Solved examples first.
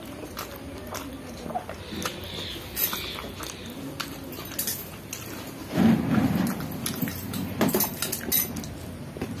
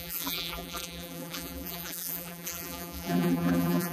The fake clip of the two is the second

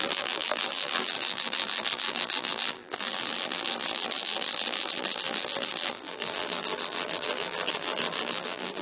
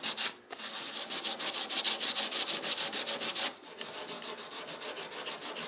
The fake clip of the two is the first